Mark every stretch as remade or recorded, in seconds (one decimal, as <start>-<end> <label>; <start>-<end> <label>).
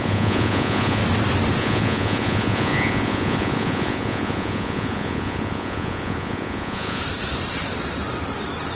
0.0-1.0 remade; 1.0-1.6 recorded; 1.6-7.0 remade; 7.0-8.8 recorded